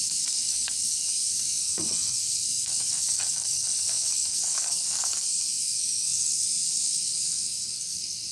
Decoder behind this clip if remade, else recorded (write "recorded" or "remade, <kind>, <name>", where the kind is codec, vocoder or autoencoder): remade, codec, SNAC